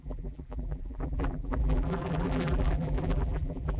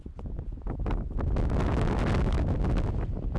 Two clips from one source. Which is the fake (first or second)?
first